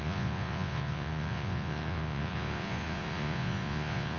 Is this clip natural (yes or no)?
no